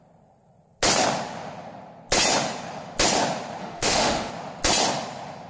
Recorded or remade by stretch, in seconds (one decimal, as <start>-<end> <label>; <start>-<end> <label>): 0.0-3.6 recorded; 3.6-4.3 remade; 4.3-5.5 recorded